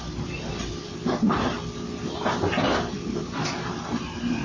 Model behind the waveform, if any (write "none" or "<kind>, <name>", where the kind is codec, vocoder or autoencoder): none